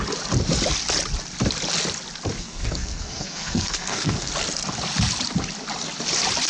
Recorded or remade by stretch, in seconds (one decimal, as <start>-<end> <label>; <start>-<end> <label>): 0.0-2.4 recorded; 2.4-4.3 remade; 4.3-6.5 recorded